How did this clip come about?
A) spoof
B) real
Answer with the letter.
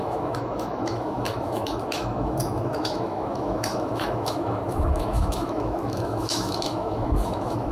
A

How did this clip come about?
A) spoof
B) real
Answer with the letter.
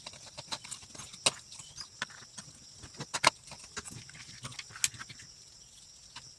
B